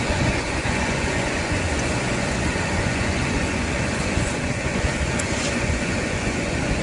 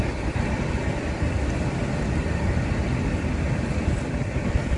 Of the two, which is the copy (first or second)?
first